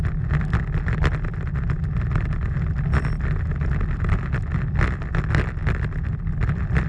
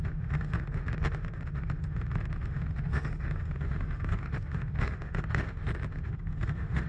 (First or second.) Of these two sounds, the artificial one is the second